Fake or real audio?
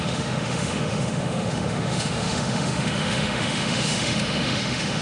fake